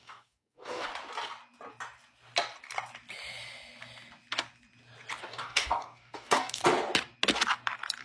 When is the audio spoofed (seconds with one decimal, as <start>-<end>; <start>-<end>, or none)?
0.0-0.9; 5.2-6.6